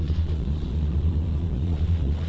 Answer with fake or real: fake